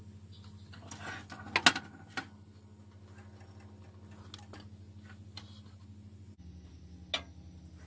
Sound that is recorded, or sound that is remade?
recorded